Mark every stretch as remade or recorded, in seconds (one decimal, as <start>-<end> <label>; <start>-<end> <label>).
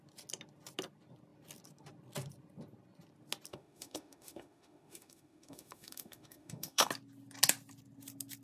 0.0-3.5 recorded; 3.5-6.9 remade; 6.9-8.4 recorded